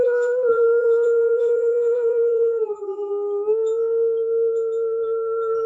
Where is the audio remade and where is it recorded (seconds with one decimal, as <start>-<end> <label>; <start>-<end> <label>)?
0.0-3.1 remade; 3.1-5.7 recorded